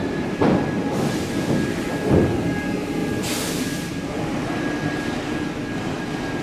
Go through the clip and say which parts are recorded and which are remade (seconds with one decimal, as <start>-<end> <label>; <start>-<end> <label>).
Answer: 0.0-3.0 recorded; 3.0-3.9 remade; 3.9-6.4 recorded